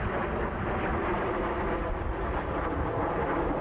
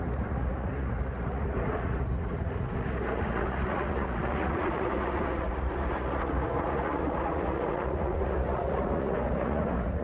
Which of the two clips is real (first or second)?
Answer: first